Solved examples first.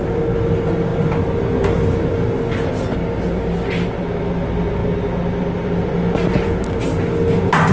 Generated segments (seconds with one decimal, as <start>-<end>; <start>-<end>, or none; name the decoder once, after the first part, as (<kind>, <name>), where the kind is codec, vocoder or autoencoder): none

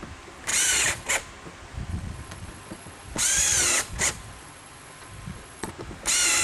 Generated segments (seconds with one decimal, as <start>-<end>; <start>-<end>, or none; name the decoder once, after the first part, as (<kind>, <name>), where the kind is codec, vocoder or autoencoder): 0.5-1.1 (vocoder, Vocos); 1.9-5.7

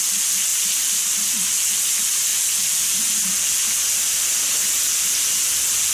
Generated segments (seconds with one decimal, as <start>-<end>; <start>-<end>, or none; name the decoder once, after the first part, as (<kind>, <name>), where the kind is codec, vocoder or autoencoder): none